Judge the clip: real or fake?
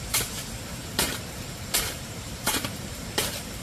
fake